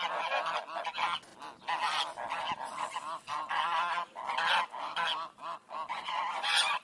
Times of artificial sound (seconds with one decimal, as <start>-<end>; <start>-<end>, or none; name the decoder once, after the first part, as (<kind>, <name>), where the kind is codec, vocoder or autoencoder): 5.9-6.8 (vocoder, Vocos)